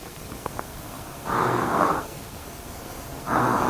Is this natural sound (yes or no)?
no